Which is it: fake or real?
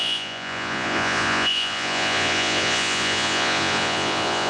fake